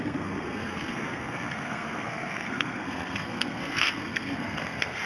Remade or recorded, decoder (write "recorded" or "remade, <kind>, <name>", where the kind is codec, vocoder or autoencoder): remade, codec, SNAC